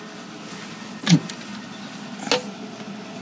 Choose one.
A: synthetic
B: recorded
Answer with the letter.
B